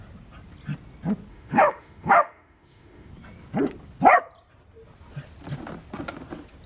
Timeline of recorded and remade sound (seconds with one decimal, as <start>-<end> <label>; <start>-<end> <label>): 0.0-1.3 recorded; 1.3-3.1 remade; 3.1-6.7 recorded

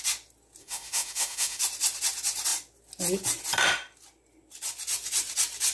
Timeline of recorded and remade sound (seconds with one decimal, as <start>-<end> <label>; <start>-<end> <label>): 0.0-0.6 recorded; 0.6-1.6 remade; 1.6-5.7 recorded

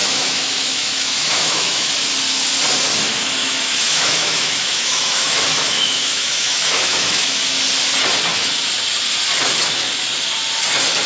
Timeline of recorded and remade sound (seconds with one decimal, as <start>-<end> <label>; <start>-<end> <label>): 0.0-1.9 remade; 1.9-3.4 recorded; 3.4-7.4 remade; 7.4-11.1 recorded

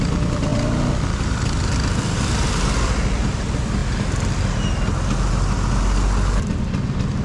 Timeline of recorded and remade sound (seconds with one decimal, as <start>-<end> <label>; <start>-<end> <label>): 0.0-7.2 recorded

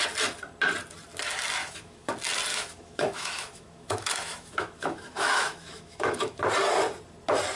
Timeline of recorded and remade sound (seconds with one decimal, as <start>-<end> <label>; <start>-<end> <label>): 0.0-1.6 recorded; 1.6-2.1 remade; 2.1-2.5 recorded; 2.5-6.4 remade; 6.4-7.6 recorded

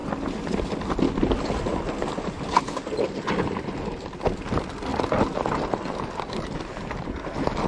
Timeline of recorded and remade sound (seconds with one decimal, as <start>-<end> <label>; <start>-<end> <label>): 0.0-7.7 recorded